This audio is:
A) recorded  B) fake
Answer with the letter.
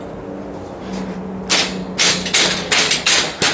A